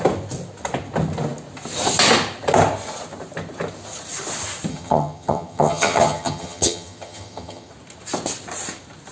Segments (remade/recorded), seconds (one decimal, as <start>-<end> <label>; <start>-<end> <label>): 0.0-4.7 recorded; 4.7-7.7 remade; 7.7-9.1 recorded